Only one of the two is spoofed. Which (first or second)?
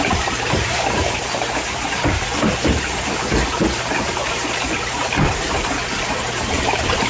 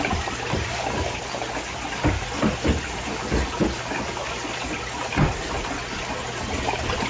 first